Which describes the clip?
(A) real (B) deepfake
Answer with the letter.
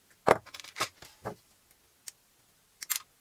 A